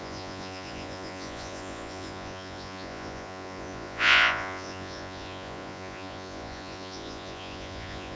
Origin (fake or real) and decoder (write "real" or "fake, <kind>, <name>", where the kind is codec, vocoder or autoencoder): fake, vocoder, Vocos